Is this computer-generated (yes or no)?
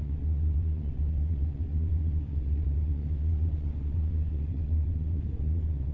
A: yes